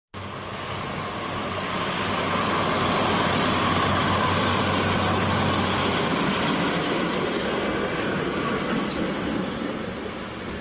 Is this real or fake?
real